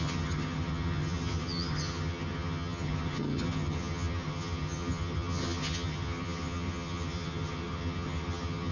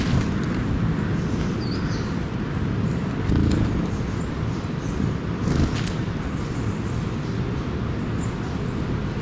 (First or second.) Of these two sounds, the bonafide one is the second